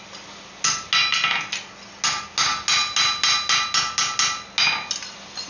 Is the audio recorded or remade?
recorded